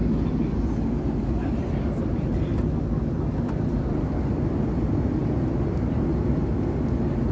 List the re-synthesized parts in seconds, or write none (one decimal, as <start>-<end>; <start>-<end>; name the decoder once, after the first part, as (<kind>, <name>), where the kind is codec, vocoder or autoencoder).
none